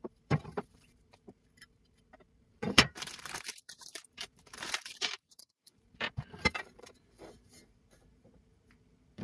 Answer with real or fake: fake